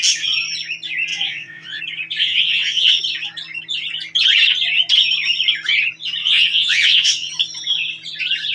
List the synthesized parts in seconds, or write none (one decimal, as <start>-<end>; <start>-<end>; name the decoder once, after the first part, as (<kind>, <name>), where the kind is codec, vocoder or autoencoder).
1.1-1.8 (vocoder, WaveNeXt); 2.2-3.0; 6.2-7.3